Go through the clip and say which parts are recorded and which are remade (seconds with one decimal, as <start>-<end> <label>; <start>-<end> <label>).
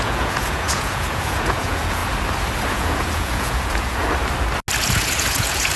0.0-2.0 remade; 2.0-2.7 recorded; 2.7-4.0 remade; 4.0-4.8 recorded; 4.8-5.8 remade